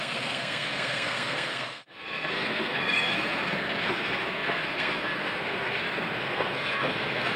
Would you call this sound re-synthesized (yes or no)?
yes